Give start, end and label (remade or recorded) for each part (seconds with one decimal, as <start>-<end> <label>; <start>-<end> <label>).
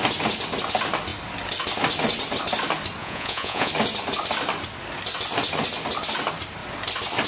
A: 0.0-3.0 recorded; 3.0-3.7 remade; 3.7-7.3 recorded